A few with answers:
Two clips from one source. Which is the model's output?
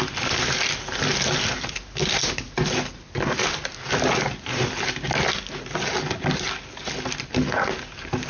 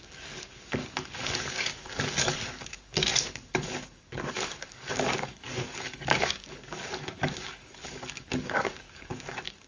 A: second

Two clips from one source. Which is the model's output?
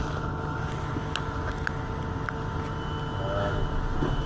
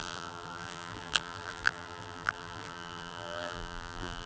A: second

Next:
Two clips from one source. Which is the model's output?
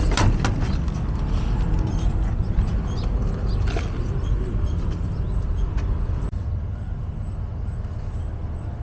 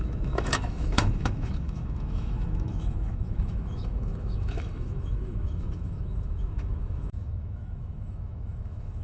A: second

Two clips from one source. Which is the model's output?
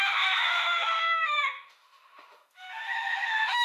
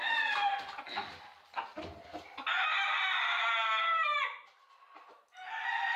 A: first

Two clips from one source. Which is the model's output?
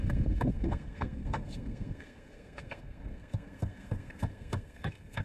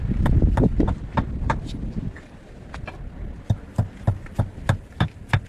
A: first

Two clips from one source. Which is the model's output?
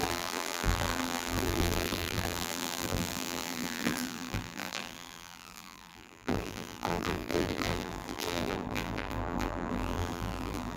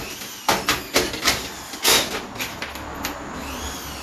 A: first